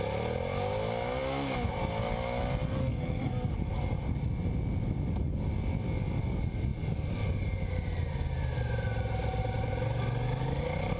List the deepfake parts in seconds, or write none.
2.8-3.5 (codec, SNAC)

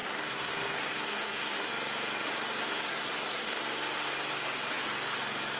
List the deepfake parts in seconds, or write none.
0.0-1.7 (codec, SNAC); 2.6-3.6